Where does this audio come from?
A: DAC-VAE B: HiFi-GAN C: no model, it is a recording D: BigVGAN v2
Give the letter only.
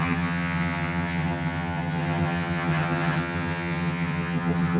B